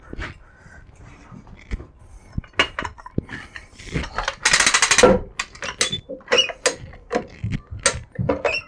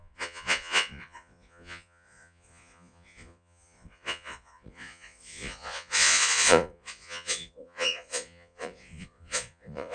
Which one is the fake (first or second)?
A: second